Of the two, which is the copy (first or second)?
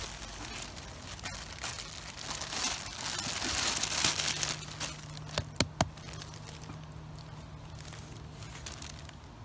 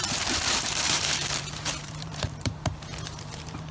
second